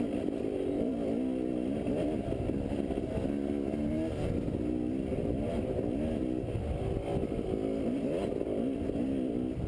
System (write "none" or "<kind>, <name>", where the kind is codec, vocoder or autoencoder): none